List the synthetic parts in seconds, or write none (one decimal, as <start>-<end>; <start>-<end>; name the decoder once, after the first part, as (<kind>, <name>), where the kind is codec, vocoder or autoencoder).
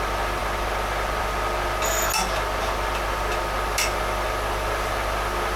none